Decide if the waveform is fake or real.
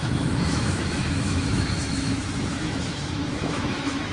fake